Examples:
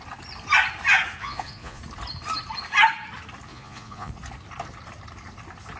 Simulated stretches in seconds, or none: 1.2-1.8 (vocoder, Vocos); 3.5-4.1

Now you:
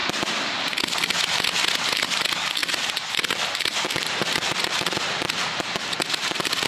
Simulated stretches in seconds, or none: 2.6-6.7 (vocoder, BigVGAN v2)

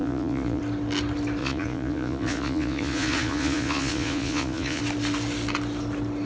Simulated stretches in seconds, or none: 0.0-0.6 (vocoder, Vocos); 1.4-4.8

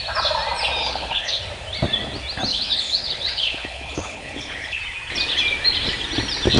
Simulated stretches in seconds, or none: 0.8-1.4 (codec, HILCodec); 2.5-4.8

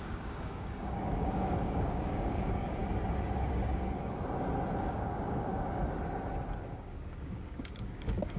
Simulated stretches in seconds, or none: 0.0-2.8 (codec, DAC); 4.8-5.8; 6.6-8.4

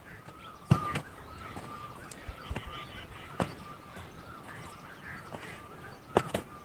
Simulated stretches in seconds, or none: 0.0-2.0 (vocoder, Vocos); 3.0-3.9; 4.9-6.6

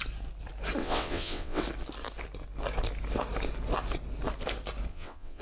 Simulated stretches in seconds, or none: 0.8-1.6 (vocoder, WaveNeXt); 4.9-5.4